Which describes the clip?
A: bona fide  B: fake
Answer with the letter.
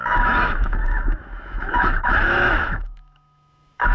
B